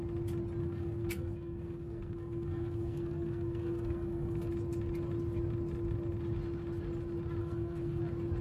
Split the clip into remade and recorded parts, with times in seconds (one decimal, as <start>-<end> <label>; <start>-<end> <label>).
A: 0.0-0.6 recorded; 0.6-4.5 remade; 4.5-7.4 recorded; 7.4-8.0 remade; 8.0-8.4 recorded